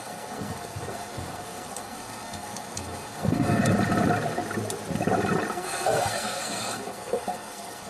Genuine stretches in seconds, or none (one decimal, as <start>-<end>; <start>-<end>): 3.6-5.5